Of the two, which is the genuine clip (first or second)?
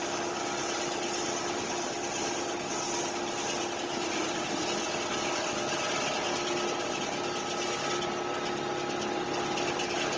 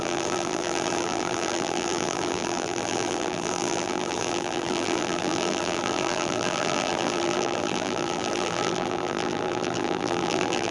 first